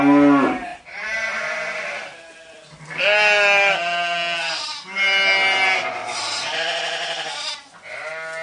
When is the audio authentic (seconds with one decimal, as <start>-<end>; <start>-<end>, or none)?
0.0-6.0; 7.5-8.4